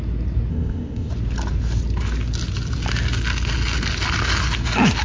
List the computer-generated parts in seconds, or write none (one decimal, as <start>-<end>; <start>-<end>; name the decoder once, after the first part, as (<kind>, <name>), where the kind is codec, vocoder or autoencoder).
0.5-1.1 (codec, ZipCodec)